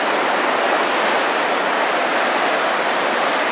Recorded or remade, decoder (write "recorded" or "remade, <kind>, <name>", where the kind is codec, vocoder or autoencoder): recorded